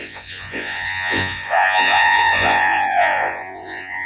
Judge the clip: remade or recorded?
remade